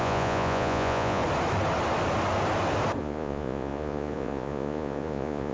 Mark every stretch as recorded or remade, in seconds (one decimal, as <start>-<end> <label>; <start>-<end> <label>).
0.0-1.2 remade; 1.2-3.0 recorded; 3.0-5.5 remade